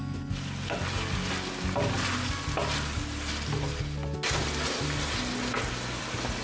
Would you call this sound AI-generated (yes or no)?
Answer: no